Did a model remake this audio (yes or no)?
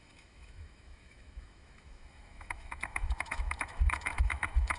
yes